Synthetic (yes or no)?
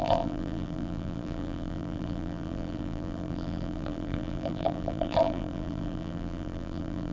yes